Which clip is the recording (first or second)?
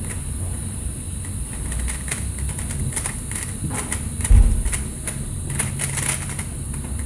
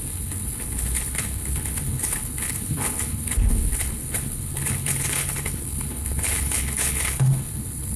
first